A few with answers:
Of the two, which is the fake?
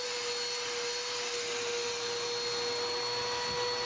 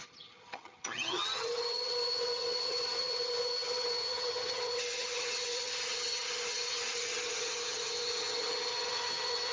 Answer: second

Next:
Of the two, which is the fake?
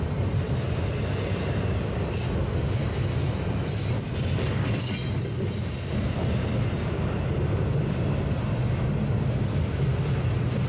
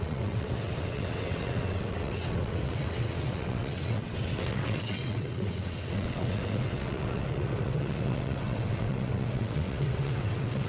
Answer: second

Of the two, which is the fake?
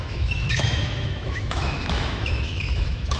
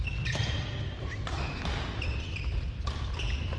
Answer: first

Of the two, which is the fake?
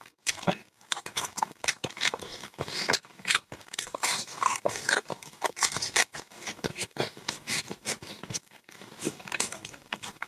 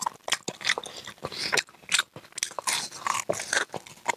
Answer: first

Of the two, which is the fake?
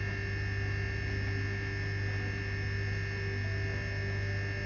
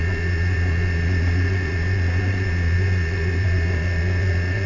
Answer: second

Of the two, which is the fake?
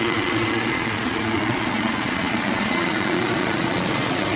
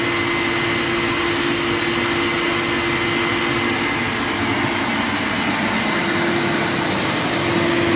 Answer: first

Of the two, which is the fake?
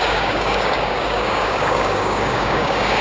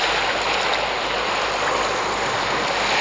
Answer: first